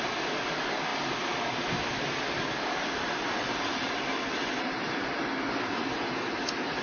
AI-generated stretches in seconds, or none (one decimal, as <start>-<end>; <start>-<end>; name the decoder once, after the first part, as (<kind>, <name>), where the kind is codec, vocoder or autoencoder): none

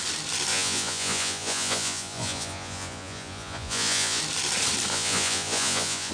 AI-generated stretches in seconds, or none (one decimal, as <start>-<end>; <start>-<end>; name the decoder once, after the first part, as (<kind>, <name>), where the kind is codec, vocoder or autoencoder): 0.5-4.2 (vocoder, Vocos); 4.9-6.1

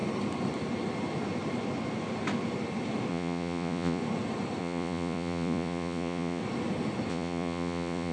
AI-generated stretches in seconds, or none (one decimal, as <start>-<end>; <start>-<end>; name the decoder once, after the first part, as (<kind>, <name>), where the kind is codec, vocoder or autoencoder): 3.1-4.0 (vocoder, Vocos); 4.6-6.4; 7.1-8.1

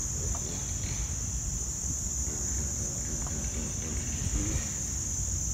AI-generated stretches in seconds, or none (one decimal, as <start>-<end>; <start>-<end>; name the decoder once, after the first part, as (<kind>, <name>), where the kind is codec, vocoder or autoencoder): none

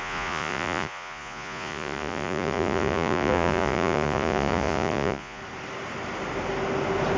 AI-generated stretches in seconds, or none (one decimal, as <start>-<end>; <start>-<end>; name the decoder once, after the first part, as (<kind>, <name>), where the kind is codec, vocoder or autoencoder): 0.0-5.4 (vocoder, Vocos)